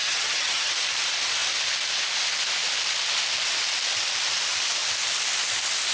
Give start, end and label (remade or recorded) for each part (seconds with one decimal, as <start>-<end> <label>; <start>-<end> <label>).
0.0-0.7 remade; 0.7-5.9 recorded